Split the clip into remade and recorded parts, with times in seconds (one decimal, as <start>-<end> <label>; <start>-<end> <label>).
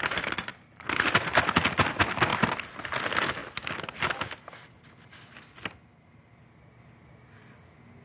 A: 0.0-0.5 recorded; 0.5-1.1 remade; 1.1-8.0 recorded